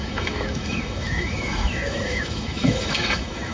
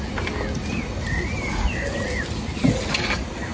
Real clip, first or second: second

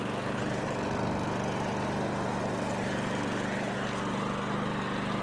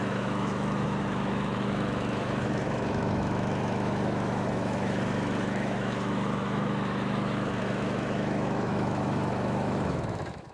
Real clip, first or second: first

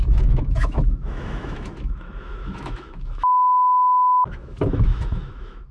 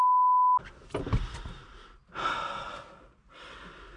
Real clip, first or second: second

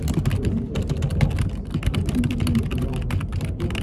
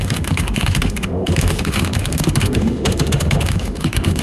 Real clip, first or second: first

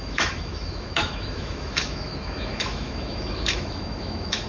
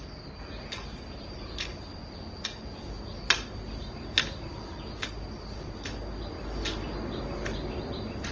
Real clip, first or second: second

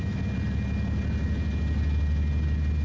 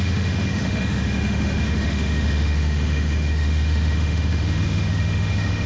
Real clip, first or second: first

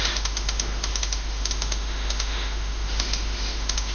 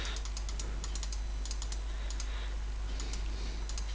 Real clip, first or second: second